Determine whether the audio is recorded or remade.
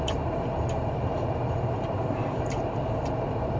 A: remade